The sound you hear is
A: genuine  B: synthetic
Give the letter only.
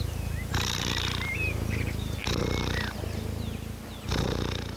A